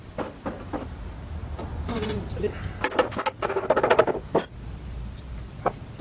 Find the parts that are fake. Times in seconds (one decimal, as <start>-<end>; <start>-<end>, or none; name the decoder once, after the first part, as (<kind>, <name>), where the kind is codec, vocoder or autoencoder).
none